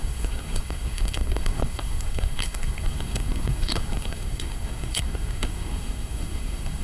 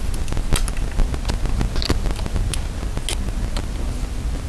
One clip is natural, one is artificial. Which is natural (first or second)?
second